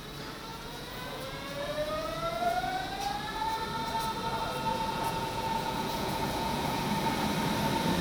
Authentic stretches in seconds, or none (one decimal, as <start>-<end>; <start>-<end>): 0.0-0.5; 2.9-4.7; 6.8-8.0